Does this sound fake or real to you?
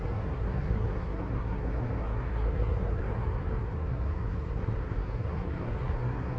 fake